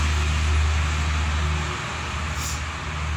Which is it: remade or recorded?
recorded